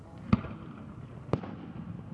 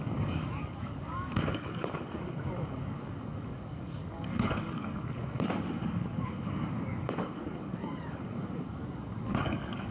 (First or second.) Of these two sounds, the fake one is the second